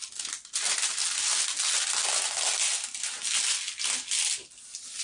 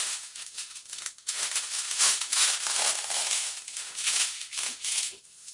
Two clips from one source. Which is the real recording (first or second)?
first